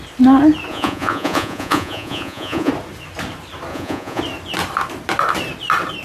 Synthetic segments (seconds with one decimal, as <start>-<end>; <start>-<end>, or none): 0.7-2.7; 3.7-4.2